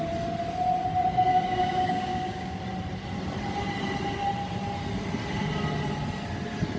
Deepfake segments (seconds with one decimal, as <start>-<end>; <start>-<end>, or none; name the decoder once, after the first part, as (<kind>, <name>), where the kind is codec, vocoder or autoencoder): 1.3-2.6 (codec, DAC)

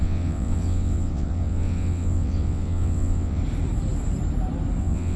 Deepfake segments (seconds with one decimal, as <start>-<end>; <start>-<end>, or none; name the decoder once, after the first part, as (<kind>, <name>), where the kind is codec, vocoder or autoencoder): 0.0-3.4 (vocoder, WaveNeXt); 4.8-5.2

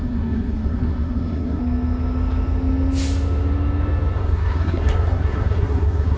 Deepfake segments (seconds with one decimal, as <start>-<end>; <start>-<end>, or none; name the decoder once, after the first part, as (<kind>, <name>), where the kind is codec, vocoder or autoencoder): 0.0-1.6 (codec, SNAC); 4.2-6.2

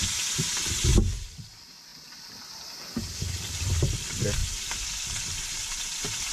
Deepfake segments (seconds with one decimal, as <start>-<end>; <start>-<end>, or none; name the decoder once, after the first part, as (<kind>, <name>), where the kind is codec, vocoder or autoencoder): 1.5-6.3 (vocoder, BigVGAN v2)

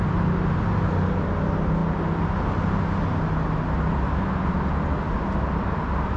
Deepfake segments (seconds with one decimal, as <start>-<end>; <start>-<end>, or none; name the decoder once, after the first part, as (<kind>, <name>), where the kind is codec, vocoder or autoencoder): none

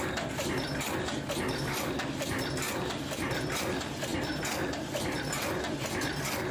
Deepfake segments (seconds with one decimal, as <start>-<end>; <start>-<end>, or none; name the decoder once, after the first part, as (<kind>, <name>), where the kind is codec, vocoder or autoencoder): none

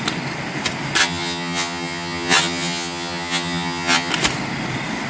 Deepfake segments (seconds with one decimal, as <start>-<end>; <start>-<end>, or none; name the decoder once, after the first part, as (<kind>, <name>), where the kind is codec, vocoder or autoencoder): 1.0-4.1 (vocoder, HiFi-GAN)

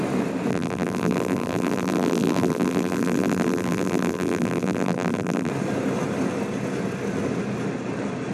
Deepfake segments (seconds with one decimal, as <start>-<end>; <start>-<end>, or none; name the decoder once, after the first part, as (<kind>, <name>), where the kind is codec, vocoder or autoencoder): 0.5-5.5 (vocoder, BigVGAN v2)